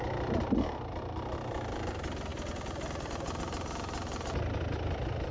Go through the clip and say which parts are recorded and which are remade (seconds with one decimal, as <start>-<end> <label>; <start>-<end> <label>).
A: 0.0-5.3 recorded